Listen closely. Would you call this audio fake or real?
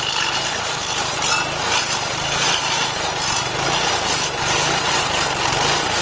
real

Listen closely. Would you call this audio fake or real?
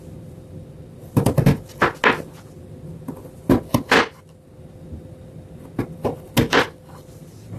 real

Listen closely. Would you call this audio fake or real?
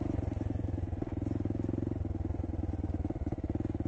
real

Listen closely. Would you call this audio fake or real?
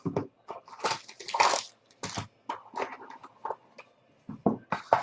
real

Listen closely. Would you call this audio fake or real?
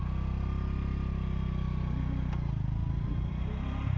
real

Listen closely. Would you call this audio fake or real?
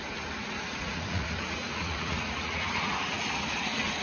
fake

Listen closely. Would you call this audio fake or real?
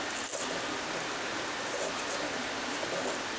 real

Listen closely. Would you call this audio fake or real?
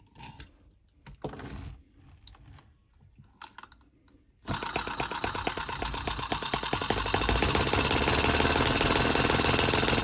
real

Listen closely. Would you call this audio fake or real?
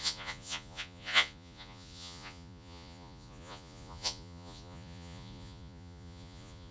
fake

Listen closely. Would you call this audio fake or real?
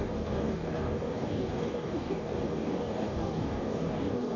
fake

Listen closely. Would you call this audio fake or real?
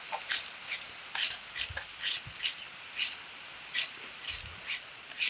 real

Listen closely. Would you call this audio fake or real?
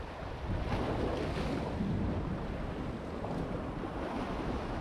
real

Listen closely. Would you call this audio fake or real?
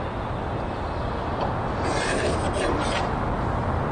real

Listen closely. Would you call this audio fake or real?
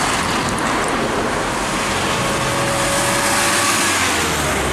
real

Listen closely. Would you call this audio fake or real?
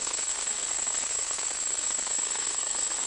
fake